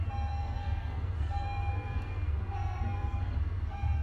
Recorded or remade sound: remade